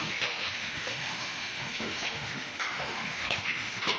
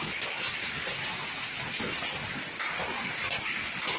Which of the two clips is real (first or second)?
second